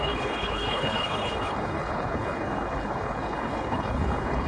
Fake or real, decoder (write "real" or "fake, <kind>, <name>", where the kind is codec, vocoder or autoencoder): fake, codec, HILCodec